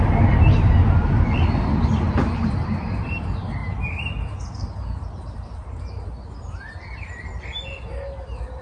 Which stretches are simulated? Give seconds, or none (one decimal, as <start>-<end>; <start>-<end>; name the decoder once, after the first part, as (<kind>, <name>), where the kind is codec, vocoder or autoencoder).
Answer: none